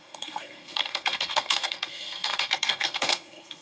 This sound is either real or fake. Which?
fake